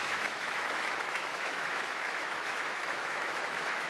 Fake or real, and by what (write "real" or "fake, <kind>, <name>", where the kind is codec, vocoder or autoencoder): fake, autoencoder, DAC-VAE